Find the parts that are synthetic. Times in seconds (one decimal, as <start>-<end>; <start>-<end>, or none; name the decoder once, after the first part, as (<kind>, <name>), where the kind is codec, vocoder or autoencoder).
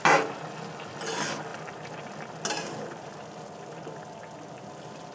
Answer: none